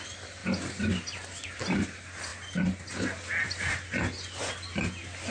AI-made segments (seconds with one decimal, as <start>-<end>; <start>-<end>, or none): none